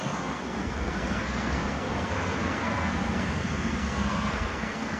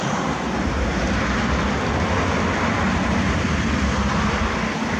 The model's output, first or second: first